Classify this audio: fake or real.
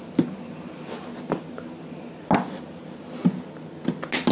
real